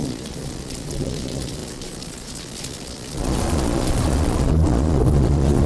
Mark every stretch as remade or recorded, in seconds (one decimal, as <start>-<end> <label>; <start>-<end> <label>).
0.0-5.7 remade